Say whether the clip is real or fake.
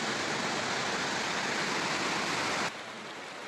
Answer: real